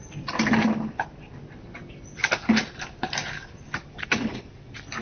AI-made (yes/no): no